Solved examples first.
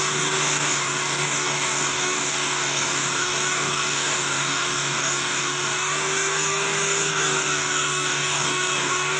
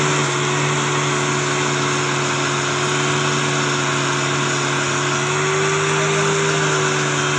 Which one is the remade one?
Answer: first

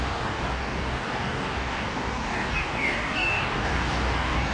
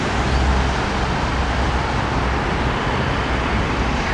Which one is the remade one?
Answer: first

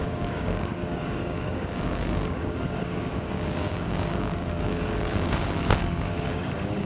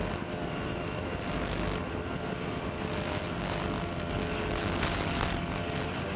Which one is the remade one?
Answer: first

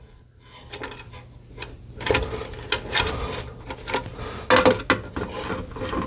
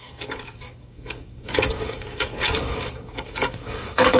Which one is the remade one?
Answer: second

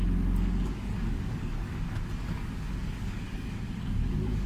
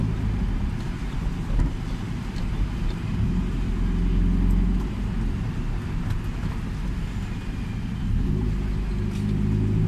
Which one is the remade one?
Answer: first